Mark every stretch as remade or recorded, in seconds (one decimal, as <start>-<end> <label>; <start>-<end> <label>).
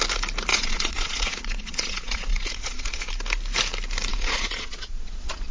0.0-0.5 recorded; 0.5-3.1 remade; 3.1-4.1 recorded; 4.1-5.5 remade